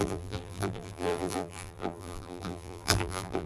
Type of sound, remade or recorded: remade